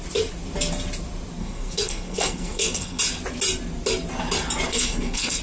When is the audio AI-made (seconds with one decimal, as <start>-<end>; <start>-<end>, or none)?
1.4-3.0; 4.7-5.4